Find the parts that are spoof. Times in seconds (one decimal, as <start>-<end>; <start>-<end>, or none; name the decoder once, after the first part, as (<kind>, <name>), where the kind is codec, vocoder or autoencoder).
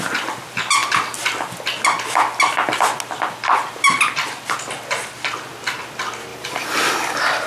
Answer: 6.3-6.9 (vocoder, BigVGAN v2)